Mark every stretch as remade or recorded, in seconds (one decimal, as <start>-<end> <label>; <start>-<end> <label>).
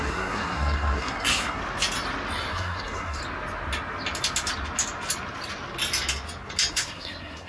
0.0-1.6 remade; 1.6-2.5 recorded; 2.5-3.2 remade; 3.2-6.7 recorded; 6.7-7.5 remade